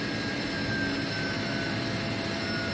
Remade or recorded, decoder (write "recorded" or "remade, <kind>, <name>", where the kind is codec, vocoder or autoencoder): recorded